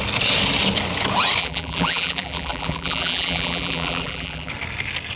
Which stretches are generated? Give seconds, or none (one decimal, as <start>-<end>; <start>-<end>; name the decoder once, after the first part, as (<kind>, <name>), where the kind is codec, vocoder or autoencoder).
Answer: 1.4-4.5 (vocoder, BigVGAN v2)